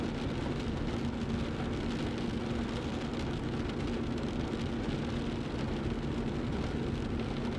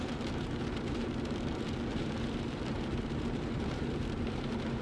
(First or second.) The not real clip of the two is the second